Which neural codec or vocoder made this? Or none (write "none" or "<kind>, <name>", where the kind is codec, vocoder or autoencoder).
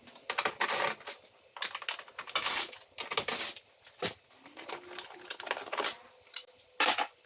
none